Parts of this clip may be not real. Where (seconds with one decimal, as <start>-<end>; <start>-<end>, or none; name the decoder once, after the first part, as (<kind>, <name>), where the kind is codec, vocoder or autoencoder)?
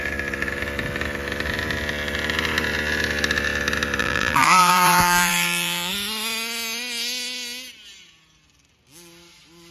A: 4.0-5.9 (vocoder, BigVGAN v2)